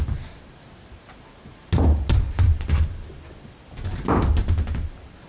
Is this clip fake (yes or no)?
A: no